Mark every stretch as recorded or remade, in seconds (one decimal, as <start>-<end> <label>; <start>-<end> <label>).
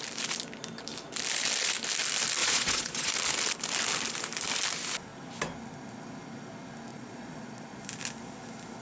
0.0-2.4 recorded; 2.4-3.1 remade; 3.1-6.9 recorded; 6.9-7.8 remade; 7.8-8.8 recorded